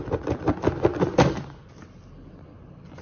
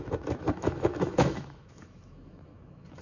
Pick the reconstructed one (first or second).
second